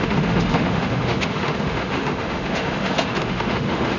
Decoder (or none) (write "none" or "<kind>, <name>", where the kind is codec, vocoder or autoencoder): autoencoder, DAC-VAE